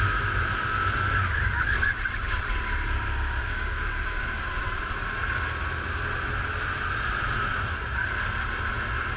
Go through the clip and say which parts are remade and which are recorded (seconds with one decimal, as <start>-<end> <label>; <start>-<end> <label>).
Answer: 0.0-3.4 recorded; 3.4-4.4 remade; 4.4-9.2 recorded

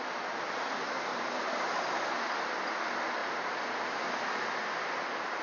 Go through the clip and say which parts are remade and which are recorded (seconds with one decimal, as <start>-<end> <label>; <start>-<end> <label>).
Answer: 0.0-1.1 recorded; 1.1-1.8 remade; 1.8-3.2 recorded; 3.2-4.2 remade; 4.2-5.4 recorded

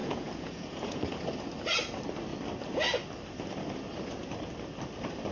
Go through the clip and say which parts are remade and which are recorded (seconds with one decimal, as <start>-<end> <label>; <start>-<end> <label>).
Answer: 0.0-1.0 remade; 1.0-5.3 recorded